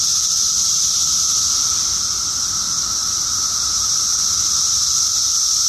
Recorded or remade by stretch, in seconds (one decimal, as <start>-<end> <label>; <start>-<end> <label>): 0.0-1.0 remade; 1.0-1.6 recorded; 1.6-5.7 remade